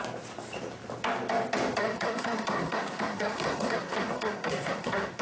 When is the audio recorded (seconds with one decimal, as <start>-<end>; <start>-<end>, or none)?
0.0-1.8